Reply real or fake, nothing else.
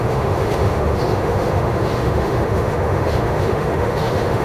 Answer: fake